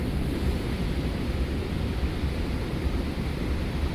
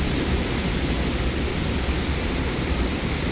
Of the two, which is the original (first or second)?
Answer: second